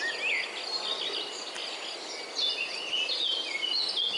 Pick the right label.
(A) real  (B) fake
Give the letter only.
A